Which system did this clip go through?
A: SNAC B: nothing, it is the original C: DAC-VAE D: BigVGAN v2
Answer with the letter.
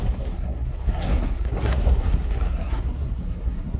A